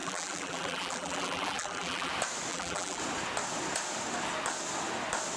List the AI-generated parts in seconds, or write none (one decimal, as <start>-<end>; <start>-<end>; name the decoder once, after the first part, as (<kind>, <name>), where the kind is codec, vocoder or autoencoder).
0.0-2.1 (vocoder, BigVGAN v2); 2.5-3.0